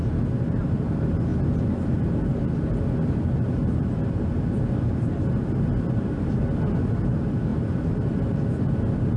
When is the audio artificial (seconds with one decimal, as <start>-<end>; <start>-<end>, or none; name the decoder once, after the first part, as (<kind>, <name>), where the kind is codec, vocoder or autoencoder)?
7.5-8.3 (vocoder, BigVGAN v2)